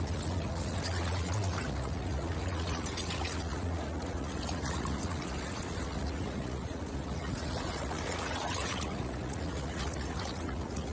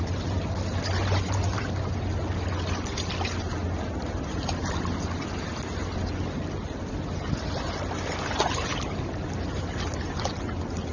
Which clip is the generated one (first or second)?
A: first